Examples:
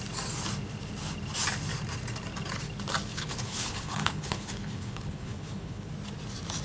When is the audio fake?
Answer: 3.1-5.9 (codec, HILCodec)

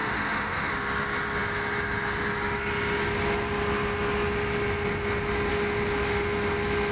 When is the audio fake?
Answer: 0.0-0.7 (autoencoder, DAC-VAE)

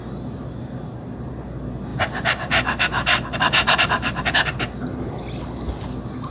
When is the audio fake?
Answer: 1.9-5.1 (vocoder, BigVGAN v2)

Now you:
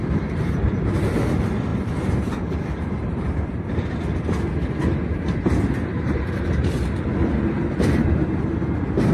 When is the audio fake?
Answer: 1.7-3.8 (vocoder, BigVGAN v2); 5.9-6.7

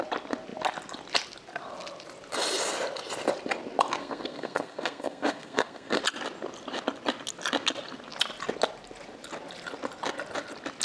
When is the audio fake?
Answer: 4.0-6.0 (codec, SNAC)

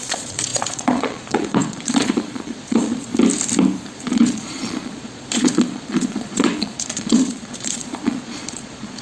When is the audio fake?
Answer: 0.0-3.1 (vocoder, Vocos); 3.9-9.0

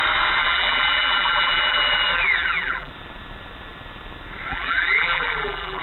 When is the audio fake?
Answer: 0.4-2.9 (vocoder, BigVGAN v2); 4.5-5.8

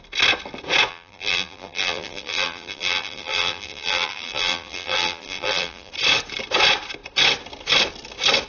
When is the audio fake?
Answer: 0.9-5.9 (vocoder, BigVGAN v2)